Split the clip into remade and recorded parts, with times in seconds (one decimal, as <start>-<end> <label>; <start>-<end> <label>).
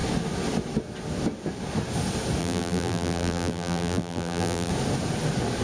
0.0-2.4 recorded; 2.4-4.7 remade; 4.7-5.6 recorded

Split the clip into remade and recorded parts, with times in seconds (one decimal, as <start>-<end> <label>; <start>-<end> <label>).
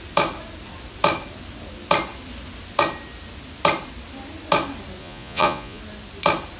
0.0-5.0 recorded; 5.0-5.8 remade; 5.8-6.6 recorded